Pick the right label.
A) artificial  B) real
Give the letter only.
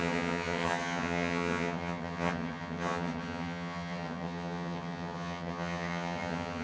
A